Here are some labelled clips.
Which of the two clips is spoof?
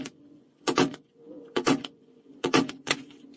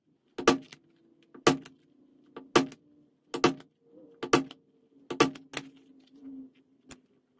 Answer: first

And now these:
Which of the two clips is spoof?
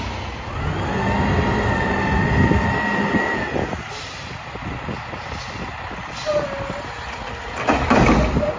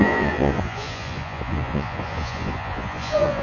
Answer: second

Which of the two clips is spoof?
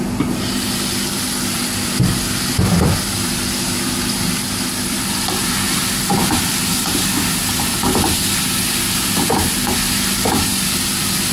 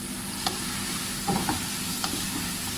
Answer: first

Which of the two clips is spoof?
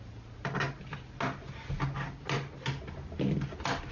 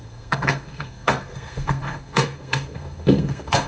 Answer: second